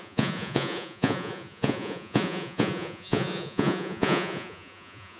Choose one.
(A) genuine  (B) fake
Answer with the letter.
B